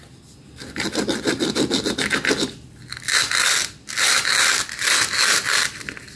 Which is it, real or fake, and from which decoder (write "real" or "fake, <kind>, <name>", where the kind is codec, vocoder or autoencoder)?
real